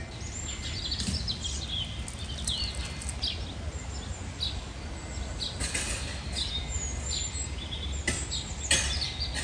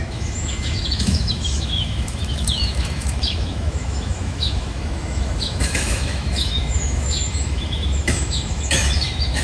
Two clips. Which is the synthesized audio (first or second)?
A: second